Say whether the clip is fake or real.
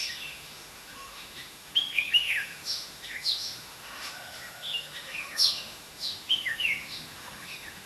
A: fake